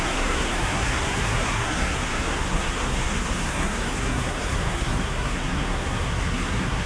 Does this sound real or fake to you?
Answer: fake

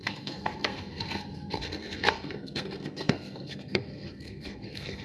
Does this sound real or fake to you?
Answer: fake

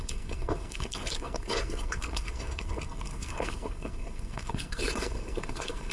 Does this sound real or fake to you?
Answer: fake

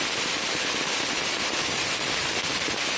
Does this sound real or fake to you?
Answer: real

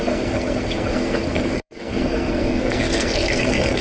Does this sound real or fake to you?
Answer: fake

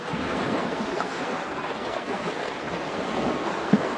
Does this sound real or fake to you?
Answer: fake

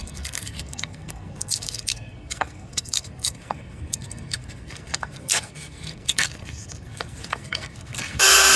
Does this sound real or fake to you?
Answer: fake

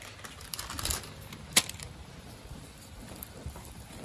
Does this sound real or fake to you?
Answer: real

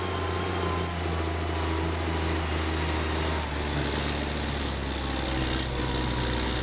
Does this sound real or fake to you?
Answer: real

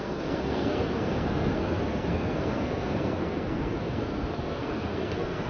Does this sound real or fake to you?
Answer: fake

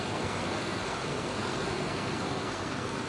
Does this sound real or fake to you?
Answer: fake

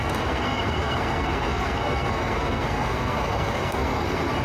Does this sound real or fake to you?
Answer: fake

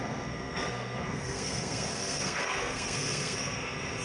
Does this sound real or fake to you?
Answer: fake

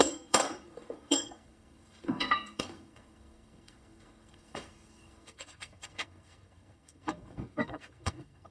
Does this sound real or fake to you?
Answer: fake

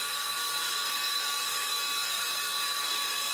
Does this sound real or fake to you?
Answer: fake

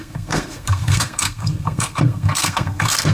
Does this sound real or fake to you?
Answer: fake